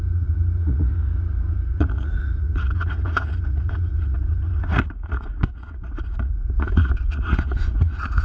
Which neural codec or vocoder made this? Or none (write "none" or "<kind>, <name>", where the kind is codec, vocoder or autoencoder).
vocoder, Vocos